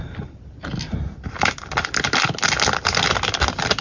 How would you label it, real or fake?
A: real